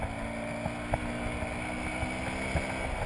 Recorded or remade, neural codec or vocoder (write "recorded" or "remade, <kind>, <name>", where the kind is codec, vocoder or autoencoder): recorded